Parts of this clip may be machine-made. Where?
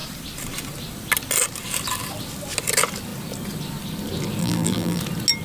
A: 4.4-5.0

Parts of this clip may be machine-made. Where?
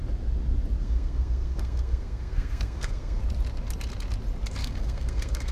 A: 0.8-3.2; 4.6-5.5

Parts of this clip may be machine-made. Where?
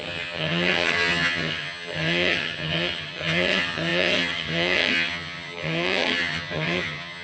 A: 0.0-7.2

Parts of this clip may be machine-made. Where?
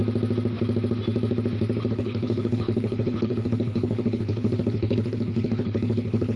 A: 1.9-6.4